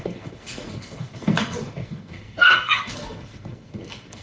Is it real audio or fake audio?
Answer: fake